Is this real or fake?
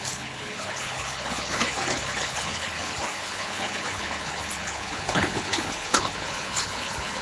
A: fake